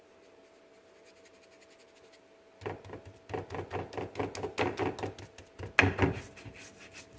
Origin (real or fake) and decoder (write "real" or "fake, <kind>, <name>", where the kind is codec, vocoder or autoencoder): real